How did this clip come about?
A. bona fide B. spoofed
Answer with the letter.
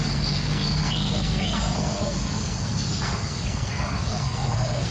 B